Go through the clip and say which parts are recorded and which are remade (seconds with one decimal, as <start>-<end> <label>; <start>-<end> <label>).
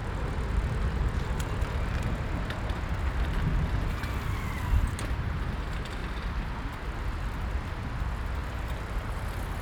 0.0-9.6 recorded